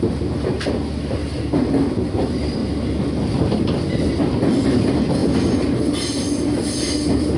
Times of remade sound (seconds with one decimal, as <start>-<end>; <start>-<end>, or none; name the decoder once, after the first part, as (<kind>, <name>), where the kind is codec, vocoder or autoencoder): 0.0-1.2 (vocoder, BigVGAN v2); 1.7-2.6; 3.6-5.2; 6.2-7.4